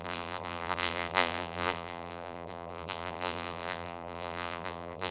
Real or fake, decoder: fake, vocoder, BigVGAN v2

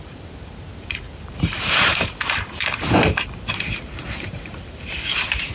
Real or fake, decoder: fake, vocoder, BigVGAN v2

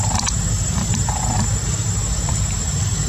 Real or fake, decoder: fake, vocoder, BigVGAN v2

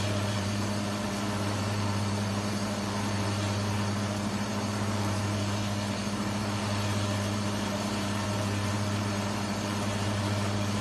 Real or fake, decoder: fake, vocoder, BigVGAN v2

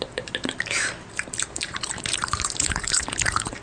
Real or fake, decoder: fake, vocoder, BigVGAN v2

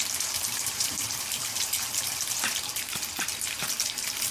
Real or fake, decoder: fake, vocoder, BigVGAN v2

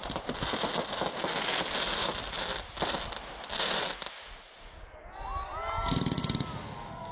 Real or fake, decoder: real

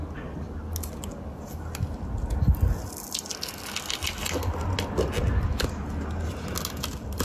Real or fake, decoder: real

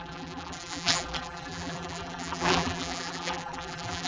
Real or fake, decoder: fake, vocoder, BigVGAN v2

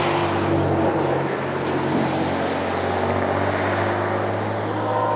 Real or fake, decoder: real